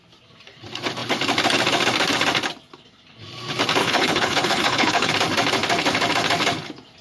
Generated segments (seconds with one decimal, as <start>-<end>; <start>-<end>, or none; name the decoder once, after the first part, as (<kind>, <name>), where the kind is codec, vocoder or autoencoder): 3.8-5.1 (codec, HILCodec)